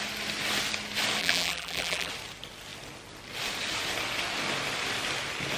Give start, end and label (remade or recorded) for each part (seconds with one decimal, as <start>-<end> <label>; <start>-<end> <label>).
0.0-1.2 recorded; 1.2-2.1 remade; 2.1-5.6 recorded